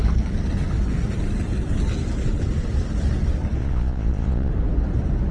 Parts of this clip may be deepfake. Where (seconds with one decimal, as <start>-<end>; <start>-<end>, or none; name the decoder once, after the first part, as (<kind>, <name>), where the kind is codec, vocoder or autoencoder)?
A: 3.6-4.5 (vocoder, Vocos)